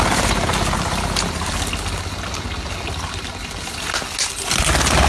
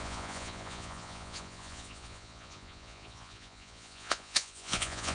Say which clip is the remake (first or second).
second